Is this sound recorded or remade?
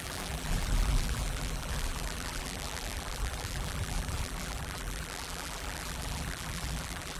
remade